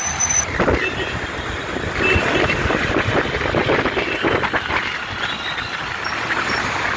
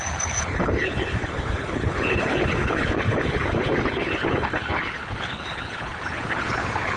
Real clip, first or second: first